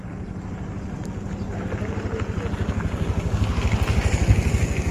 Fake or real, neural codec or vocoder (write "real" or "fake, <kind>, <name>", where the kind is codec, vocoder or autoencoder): real